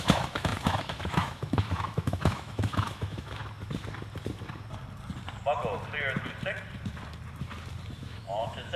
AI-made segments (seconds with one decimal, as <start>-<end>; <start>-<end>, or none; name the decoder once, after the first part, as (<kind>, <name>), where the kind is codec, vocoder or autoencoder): 0.0-3.4 (autoencoder, DAC-VAE); 8.0-8.8